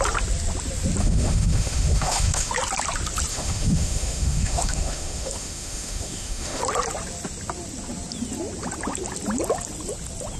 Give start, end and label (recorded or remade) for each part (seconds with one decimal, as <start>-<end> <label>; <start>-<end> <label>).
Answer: 0.0-1.0 recorded; 1.0-2.5 remade; 2.5-3.3 recorded; 3.3-6.6 remade; 6.6-10.4 recorded